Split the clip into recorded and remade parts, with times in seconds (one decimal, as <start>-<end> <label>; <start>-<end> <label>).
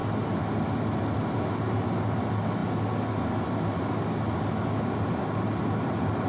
0.0-6.3 recorded